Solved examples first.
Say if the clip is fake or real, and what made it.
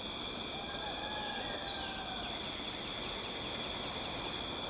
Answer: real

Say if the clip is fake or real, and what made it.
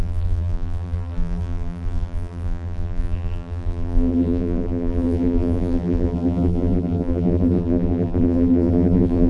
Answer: fake, vocoder, BigVGAN v2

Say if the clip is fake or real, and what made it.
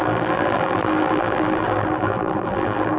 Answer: fake, vocoder, BigVGAN v2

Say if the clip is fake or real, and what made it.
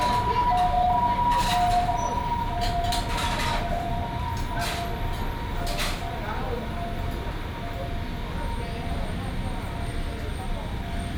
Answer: real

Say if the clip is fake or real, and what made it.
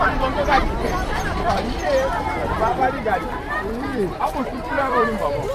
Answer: fake, vocoder, BigVGAN v2